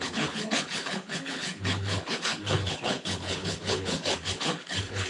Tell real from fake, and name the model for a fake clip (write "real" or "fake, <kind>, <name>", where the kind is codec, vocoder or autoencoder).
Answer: fake, codec, HILCodec